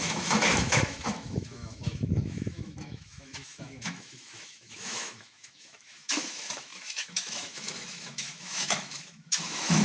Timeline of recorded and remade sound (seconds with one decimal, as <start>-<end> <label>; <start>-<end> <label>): 0.0-9.8 remade